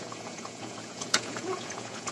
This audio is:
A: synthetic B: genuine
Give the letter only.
A